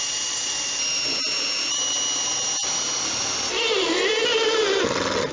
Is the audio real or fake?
real